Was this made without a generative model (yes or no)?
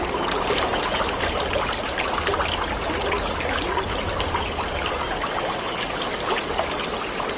yes